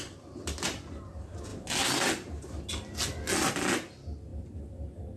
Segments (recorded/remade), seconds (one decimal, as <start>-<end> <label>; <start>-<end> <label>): 0.0-5.2 recorded